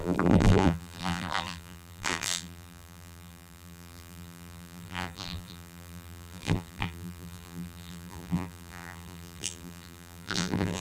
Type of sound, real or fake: fake